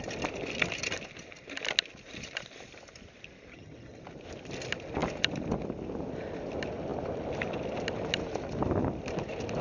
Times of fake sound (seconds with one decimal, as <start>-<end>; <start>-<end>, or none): 3.5-4.0